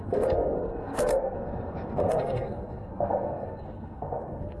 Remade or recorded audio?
remade